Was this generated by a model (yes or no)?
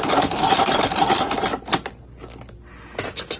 no